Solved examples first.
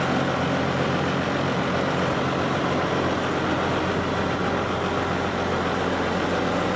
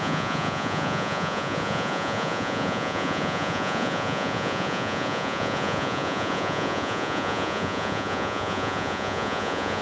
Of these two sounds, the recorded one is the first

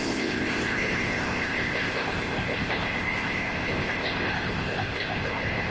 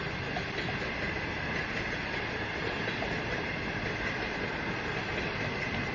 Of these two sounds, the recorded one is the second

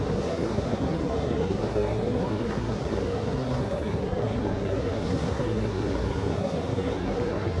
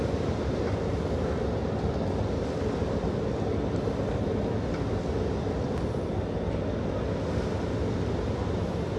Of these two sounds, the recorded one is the second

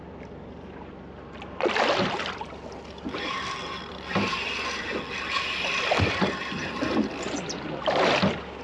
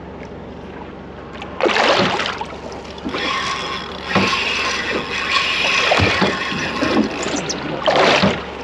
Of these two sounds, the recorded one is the second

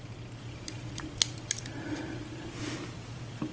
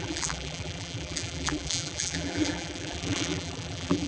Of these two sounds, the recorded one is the first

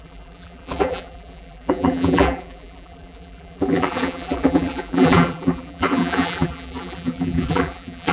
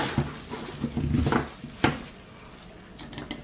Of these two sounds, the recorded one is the second